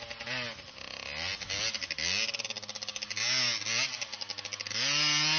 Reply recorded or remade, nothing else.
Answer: recorded